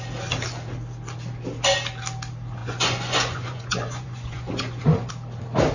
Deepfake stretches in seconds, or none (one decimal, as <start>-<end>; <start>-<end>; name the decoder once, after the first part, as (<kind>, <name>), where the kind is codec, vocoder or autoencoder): 2.6-5.1 (vocoder, Vocos)